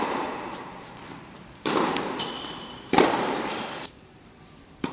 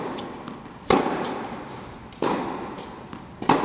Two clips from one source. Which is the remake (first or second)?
first